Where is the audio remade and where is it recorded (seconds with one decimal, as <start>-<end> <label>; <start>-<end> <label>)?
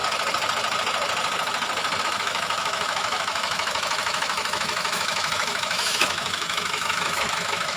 0.0-2.0 recorded; 2.0-7.8 remade